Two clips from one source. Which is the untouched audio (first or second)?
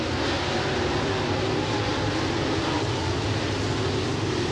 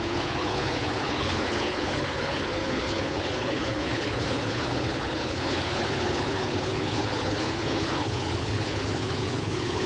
first